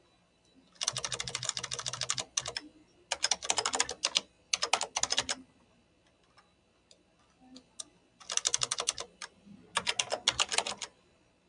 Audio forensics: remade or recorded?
recorded